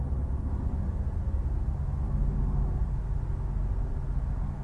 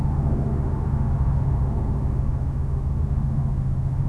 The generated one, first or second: second